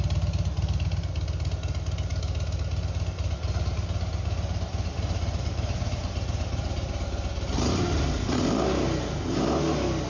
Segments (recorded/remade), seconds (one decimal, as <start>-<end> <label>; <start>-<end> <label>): 0.0-10.1 recorded